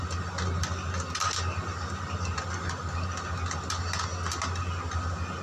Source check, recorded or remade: recorded